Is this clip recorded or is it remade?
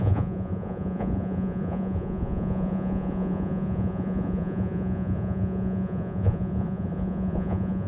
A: remade